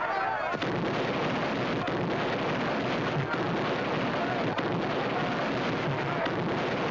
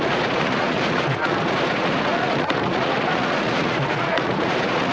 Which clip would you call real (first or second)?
first